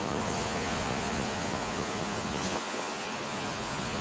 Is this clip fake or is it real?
fake